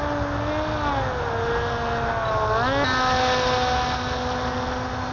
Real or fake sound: real